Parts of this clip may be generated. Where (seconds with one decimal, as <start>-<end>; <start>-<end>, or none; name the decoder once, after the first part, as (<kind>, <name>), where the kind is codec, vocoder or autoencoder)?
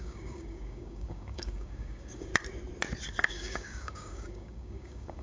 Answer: 0.0-2.3 (codec, DAC); 3.3-5.2